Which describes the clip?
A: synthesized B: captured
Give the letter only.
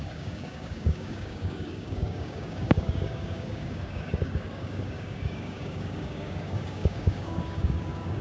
A